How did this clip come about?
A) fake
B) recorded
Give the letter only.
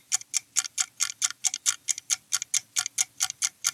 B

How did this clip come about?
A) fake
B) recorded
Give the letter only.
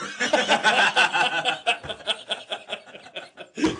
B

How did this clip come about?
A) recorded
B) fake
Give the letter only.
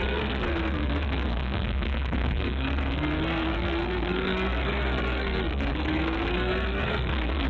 B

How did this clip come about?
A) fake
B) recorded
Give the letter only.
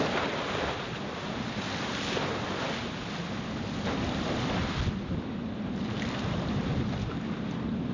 B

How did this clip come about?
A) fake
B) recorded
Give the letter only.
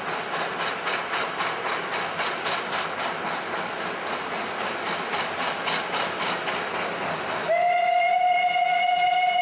B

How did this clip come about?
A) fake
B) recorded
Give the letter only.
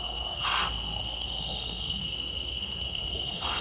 A